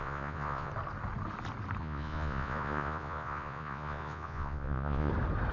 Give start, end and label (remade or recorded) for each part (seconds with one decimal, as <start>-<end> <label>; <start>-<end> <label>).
0.0-0.7 remade; 0.7-1.8 recorded; 1.8-5.1 remade; 5.1-5.5 recorded